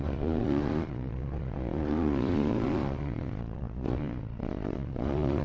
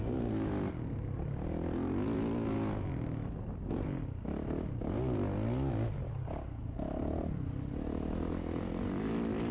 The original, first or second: second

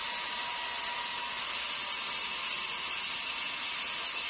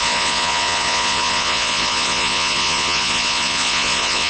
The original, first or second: first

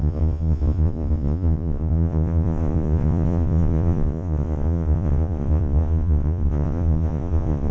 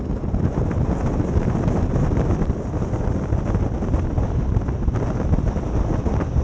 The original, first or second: second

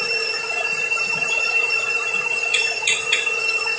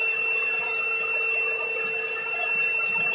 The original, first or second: second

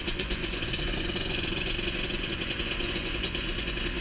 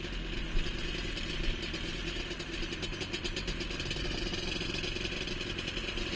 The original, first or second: second